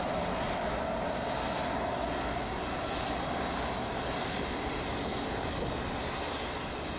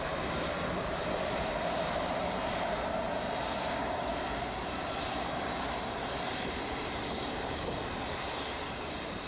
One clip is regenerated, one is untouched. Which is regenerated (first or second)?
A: second